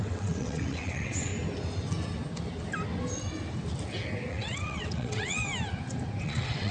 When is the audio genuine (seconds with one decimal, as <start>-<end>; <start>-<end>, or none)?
1.3-4.3; 5.5-6.2